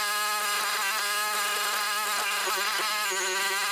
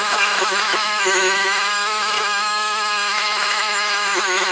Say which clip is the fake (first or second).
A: second